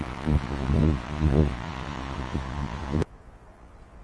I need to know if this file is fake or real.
fake